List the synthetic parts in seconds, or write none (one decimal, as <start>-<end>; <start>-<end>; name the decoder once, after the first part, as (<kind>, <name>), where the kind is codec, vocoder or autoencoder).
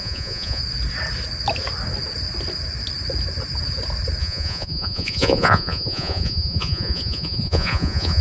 0.0-0.6 (vocoder, Vocos); 4.2-8.2